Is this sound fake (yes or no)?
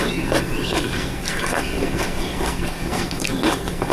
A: yes